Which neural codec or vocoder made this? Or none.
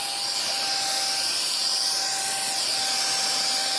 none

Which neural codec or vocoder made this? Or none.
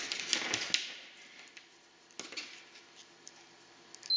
none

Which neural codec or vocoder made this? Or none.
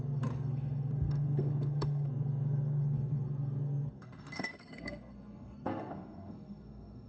codec, SNAC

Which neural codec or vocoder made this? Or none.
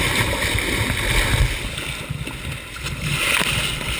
none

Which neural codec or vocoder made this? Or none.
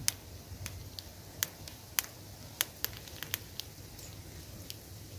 none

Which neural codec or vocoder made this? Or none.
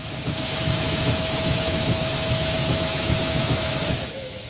autoencoder, DAC-VAE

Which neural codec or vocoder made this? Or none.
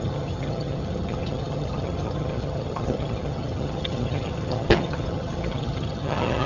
vocoder, HiFi-GAN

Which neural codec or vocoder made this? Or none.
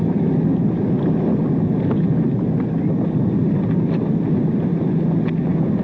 none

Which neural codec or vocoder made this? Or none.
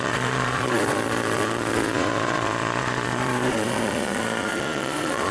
vocoder, Vocos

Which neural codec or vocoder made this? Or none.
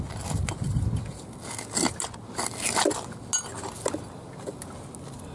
none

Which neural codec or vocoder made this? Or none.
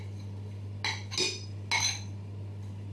none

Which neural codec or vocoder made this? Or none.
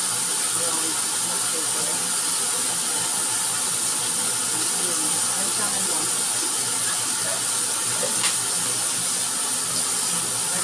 none